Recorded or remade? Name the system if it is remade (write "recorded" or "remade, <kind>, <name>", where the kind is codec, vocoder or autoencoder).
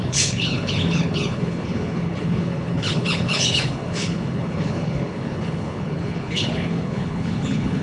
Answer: remade, codec, HILCodec